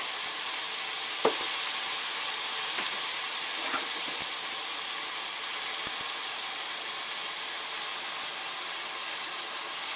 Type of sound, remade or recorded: recorded